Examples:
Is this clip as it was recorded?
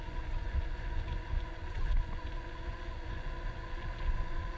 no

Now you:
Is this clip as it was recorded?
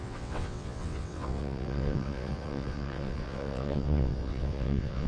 no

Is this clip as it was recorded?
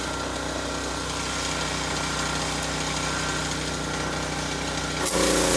yes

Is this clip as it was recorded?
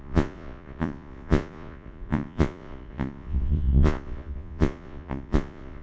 no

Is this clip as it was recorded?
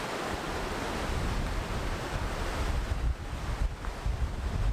yes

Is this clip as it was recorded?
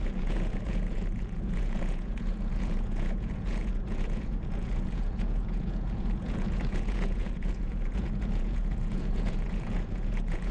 no